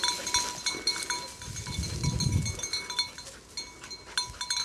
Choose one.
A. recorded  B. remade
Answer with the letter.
A